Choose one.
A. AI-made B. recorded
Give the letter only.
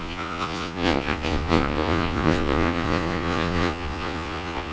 A